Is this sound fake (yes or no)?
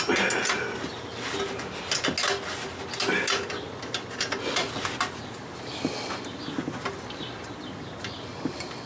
no